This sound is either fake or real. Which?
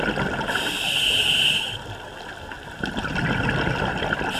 real